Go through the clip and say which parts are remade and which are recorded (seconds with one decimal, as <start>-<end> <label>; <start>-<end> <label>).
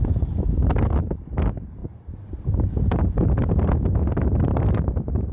0.0-5.3 recorded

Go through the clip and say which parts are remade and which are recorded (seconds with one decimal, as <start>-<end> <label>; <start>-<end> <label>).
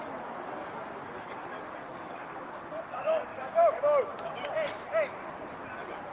0.0-1.8 recorded; 1.8-2.6 remade; 2.6-3.3 recorded; 3.3-3.8 remade; 3.8-6.1 recorded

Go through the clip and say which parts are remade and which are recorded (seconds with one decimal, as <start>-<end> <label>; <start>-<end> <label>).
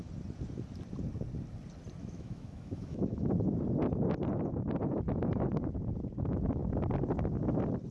0.0-2.0 recorded; 2.0-3.3 remade; 3.3-7.9 recorded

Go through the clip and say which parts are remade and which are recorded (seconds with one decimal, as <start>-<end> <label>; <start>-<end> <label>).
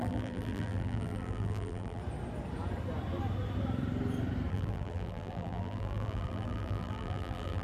0.0-2.0 remade; 2.0-4.5 recorded; 4.5-7.6 remade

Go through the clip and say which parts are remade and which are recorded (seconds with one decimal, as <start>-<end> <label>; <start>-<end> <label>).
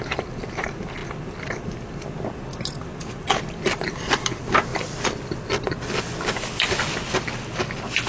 0.0-8.1 recorded